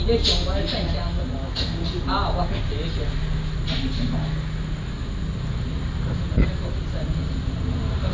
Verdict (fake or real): real